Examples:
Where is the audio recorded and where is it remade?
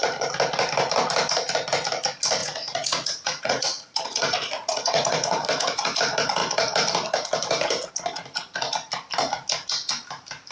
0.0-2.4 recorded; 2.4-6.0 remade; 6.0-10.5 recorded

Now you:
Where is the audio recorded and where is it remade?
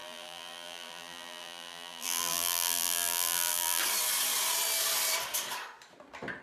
0.0-3.8 remade; 3.8-6.4 recorded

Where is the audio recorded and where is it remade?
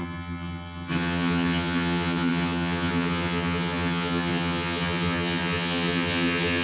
0.0-6.6 remade